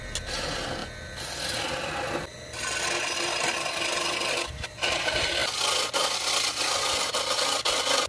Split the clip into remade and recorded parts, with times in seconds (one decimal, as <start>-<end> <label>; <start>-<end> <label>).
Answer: 0.0-8.1 recorded